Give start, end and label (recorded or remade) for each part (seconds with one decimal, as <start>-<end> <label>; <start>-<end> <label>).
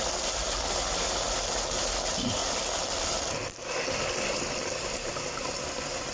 0.0-6.1 recorded